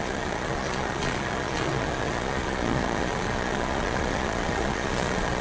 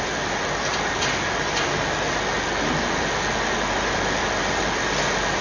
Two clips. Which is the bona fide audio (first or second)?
second